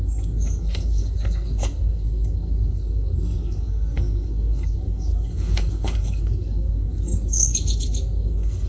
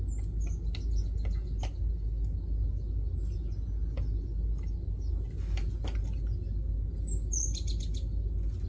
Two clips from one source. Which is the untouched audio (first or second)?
second